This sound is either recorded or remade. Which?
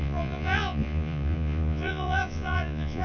remade